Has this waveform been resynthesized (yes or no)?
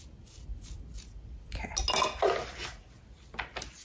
no